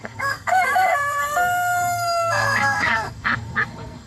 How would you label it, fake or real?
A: fake